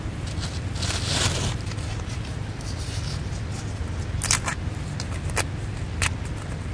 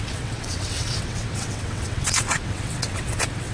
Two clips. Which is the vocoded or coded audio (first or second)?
second